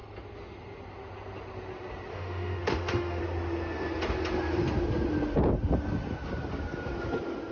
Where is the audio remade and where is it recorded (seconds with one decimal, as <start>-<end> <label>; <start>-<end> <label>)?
0.0-2.1 recorded; 2.1-3.2 remade; 3.2-7.5 recorded